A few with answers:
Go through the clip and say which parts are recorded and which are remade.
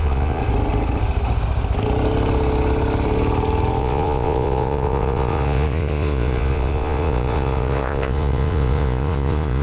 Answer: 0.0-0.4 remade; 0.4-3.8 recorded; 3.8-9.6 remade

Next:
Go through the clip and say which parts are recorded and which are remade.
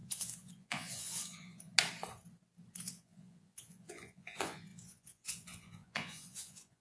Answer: 0.0-1.7 remade; 1.7-2.7 recorded; 2.7-6.8 remade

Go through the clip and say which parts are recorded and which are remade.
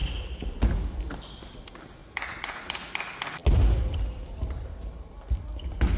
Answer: 0.0-2.0 recorded; 2.0-2.9 remade; 2.9-6.0 recorded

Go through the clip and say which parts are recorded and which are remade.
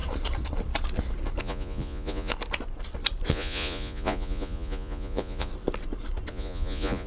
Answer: 0.0-1.4 recorded; 1.4-2.3 remade; 2.3-3.3 recorded; 3.3-5.5 remade; 5.5-6.3 recorded; 6.3-7.1 remade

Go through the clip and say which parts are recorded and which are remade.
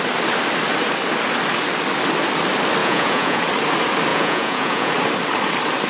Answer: 0.0-2.8 recorded; 2.8-3.4 remade; 3.4-4.1 recorded; 4.1-4.9 remade; 4.9-5.9 recorded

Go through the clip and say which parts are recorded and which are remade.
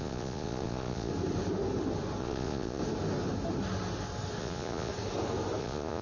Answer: 0.0-1.1 remade; 1.1-2.2 recorded; 2.2-2.8 remade; 2.8-4.4 recorded; 4.4-4.9 remade; 4.9-5.6 recorded; 5.6-6.0 remade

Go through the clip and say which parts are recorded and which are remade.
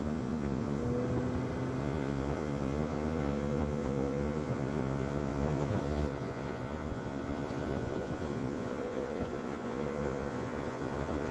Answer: 0.0-0.8 remade; 0.8-1.8 recorded; 1.8-11.3 remade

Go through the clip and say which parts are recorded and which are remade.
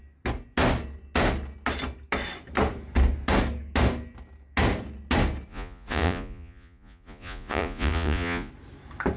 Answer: 0.0-5.5 recorded; 5.5-8.5 remade; 8.5-9.2 recorded